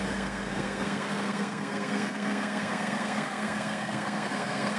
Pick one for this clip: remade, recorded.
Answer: remade